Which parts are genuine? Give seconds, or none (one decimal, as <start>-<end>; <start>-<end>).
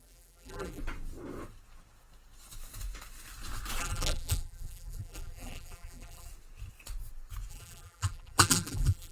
0.8-3.8; 6.3-7.5